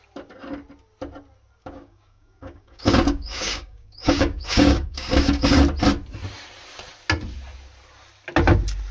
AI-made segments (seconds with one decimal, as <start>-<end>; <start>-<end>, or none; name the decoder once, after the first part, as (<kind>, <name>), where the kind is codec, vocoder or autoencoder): 1.6-5.6 (codec, DAC)